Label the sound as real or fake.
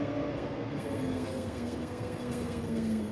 fake